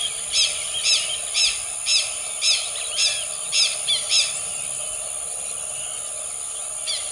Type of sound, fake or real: real